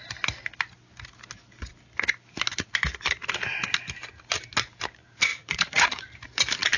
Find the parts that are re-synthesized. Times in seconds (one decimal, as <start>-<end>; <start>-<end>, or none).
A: 5.3-6.0